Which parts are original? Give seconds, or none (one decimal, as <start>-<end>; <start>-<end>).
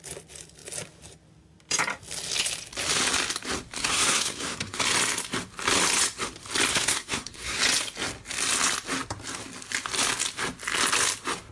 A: 0.0-3.8; 4.8-6.7; 7.6-11.5